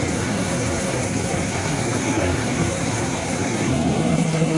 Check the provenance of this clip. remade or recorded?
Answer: remade